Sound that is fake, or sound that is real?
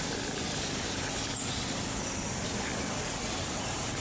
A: real